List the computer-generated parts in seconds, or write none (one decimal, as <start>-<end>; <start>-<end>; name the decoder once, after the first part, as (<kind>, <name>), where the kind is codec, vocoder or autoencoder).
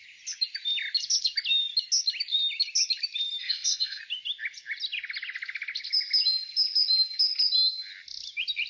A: 3.4-4.0 (codec, ZipCodec)